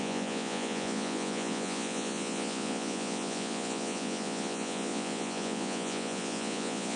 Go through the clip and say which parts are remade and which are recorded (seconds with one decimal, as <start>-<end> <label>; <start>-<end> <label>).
0.0-7.0 remade